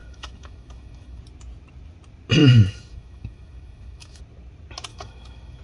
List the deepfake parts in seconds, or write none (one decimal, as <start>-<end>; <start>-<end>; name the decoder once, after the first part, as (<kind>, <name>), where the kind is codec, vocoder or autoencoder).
0.0-1.2 (autoencoder, DAC-VAE); 2.4-4.2; 4.9-5.6